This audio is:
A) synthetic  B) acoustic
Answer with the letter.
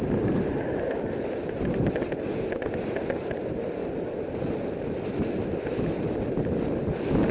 B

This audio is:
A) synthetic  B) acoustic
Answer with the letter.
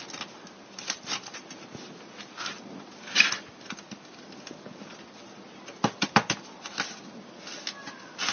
B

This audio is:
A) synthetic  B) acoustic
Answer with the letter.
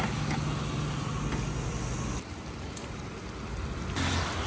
B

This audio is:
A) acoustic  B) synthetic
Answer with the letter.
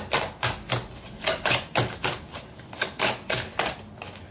A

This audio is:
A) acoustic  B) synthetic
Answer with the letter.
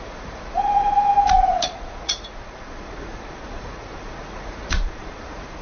B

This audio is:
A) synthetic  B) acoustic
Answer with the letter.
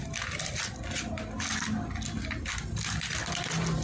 B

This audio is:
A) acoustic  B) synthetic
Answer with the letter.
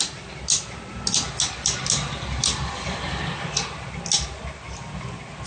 A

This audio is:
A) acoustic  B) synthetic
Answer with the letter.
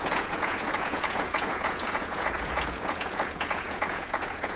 B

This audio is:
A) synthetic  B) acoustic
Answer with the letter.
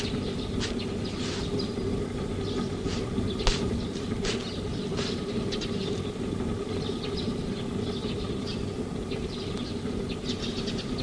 B